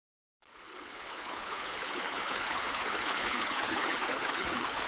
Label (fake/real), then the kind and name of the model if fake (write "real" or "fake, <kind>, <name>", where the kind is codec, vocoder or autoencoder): fake, codec, HILCodec